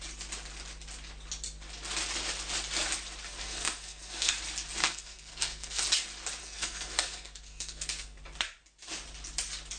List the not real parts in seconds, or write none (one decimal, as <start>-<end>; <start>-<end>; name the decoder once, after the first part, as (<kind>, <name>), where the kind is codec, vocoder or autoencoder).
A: 3.3-4.3 (codec, SNAC); 4.8-5.8; 6.4-8.2